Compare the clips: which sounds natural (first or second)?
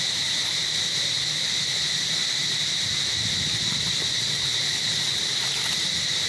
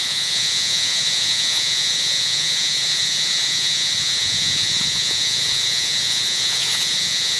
first